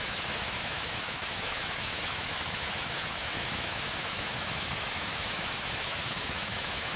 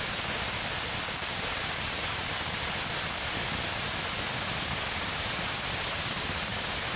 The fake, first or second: first